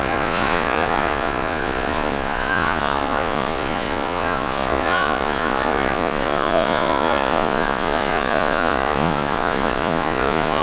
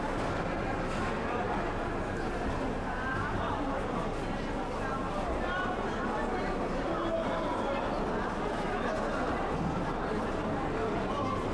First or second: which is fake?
first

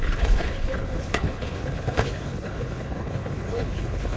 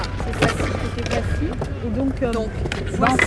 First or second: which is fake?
first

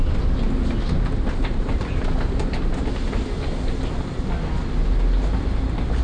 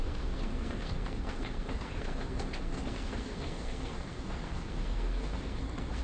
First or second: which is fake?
second